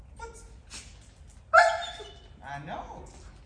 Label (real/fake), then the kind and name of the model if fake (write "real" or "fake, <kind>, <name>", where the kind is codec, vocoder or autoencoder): real